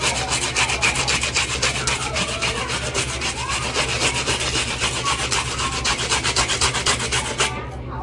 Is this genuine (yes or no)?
yes